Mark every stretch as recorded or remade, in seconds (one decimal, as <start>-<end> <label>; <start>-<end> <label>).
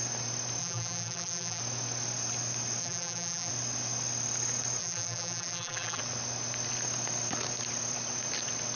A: 0.0-0.6 recorded; 0.6-1.6 remade; 1.6-2.8 recorded; 2.8-3.5 remade; 3.5-4.8 recorded; 4.8-6.0 remade; 6.0-8.8 recorded